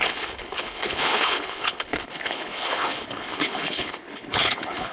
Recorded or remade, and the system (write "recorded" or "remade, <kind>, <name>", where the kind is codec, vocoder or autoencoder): remade, codec, HILCodec